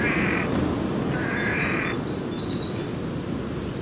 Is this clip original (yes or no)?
yes